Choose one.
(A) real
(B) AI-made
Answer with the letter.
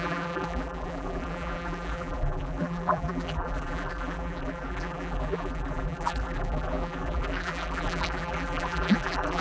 B